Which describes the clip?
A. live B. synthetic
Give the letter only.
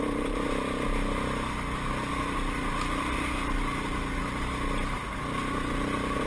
A